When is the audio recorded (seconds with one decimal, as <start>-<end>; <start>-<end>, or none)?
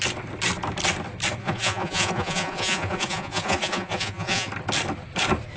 0.0-1.4; 4.5-5.6